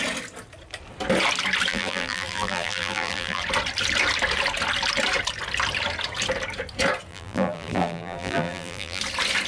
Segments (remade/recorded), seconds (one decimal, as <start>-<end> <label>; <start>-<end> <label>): 0.0-1.7 recorded; 1.7-3.4 remade; 3.4-7.1 recorded; 7.1-9.0 remade; 9.0-9.5 recorded